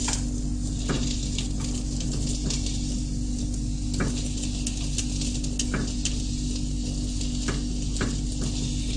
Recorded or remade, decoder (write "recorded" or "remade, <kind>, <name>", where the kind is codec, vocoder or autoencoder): recorded